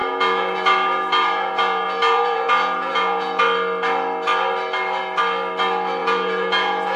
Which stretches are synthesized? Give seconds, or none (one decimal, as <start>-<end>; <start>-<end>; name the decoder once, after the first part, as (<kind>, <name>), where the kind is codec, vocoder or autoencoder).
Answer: 0.0-3.4 (vocoder, Vocos); 6.0-7.0